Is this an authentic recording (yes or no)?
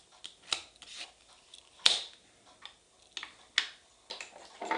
yes